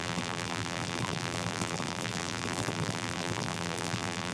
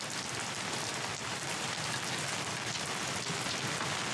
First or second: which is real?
second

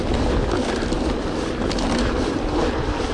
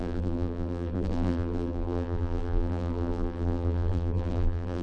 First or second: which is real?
first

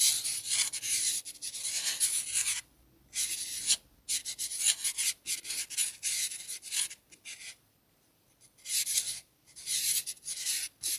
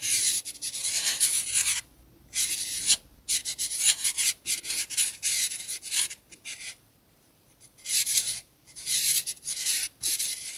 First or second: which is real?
first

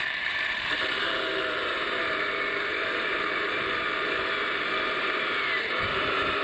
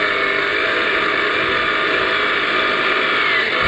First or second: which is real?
second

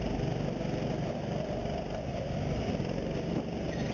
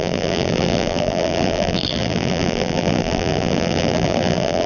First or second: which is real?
first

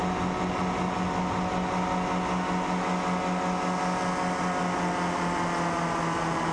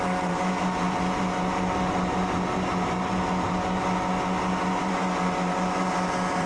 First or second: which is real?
first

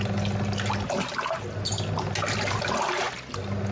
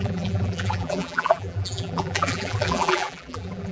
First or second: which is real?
first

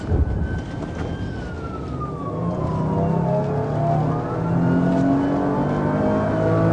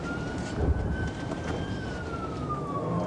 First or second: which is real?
first